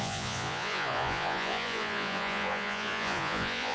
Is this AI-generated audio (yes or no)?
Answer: yes